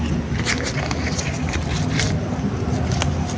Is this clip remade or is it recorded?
recorded